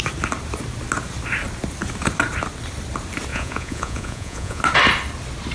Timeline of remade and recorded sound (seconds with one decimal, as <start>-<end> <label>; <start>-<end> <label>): 0.0-3.3 recorded; 3.3-4.6 remade; 4.6-5.5 recorded